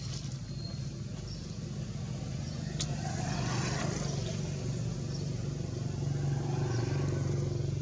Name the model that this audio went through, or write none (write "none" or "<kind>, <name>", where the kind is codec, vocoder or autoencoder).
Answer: none